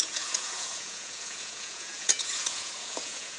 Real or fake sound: fake